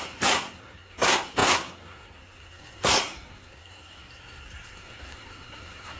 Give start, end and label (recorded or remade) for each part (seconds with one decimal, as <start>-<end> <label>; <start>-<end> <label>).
0.0-6.0 remade